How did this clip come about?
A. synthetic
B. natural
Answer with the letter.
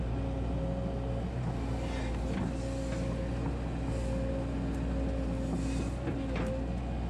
B